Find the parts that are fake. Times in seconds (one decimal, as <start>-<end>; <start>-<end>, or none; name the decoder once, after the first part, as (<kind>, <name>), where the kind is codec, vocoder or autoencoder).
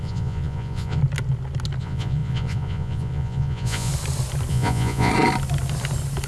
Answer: 0.0-1.0 (vocoder, Vocos); 1.8-3.9; 4.5-5.1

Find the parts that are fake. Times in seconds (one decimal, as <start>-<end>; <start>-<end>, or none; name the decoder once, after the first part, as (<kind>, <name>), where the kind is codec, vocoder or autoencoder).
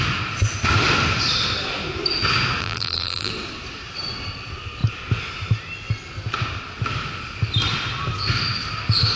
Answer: 2.6-3.3 (vocoder, BigVGAN v2)